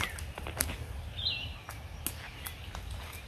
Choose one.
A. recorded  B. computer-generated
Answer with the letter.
A